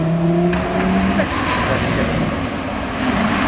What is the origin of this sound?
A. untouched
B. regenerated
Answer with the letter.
A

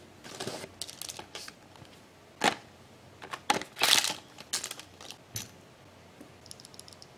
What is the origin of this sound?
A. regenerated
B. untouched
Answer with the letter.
B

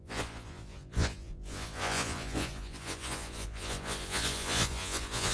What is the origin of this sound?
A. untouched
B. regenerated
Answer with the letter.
B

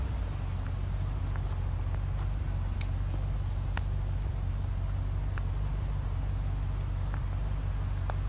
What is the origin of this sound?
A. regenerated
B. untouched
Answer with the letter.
B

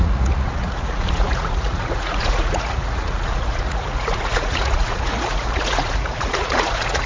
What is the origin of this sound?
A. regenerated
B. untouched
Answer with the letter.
A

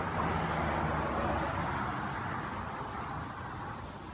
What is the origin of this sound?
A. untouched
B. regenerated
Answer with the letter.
A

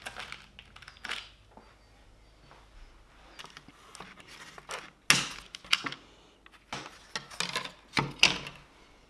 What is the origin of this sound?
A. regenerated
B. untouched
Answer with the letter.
B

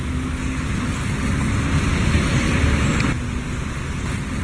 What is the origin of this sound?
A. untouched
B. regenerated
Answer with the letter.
A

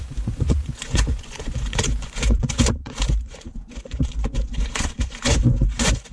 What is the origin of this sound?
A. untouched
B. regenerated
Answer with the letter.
B